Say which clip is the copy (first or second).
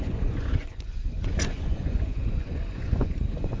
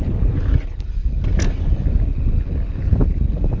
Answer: first